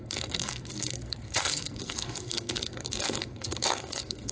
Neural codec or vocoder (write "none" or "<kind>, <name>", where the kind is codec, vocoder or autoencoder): codec, SNAC